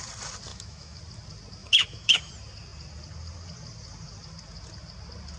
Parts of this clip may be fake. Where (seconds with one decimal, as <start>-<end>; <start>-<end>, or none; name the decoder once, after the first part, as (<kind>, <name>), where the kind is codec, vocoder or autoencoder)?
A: 0.5-1.0 (autoencoder, DAC-VAE); 1.6-2.3